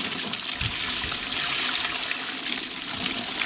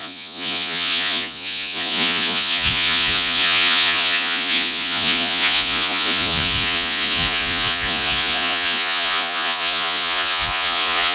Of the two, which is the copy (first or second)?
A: second